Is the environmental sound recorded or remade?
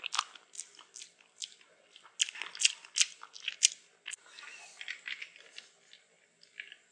recorded